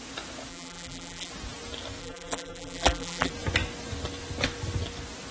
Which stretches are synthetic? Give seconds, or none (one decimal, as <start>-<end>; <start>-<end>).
0.5-1.3; 2.0-3.3